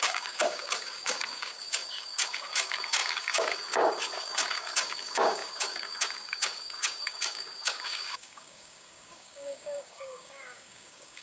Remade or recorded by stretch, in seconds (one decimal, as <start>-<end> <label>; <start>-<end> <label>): 0.0-11.2 remade